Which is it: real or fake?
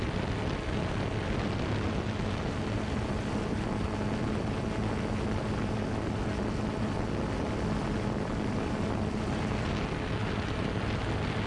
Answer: real